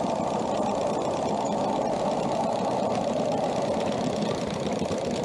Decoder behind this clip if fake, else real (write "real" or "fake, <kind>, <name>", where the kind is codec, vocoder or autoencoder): real